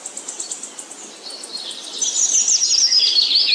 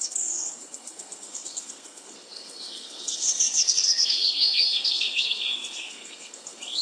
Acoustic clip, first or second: first